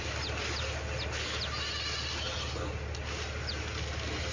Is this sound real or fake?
real